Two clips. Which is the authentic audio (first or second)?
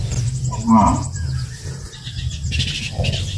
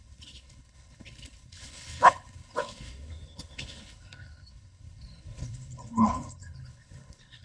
first